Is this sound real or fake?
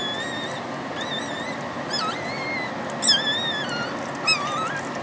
real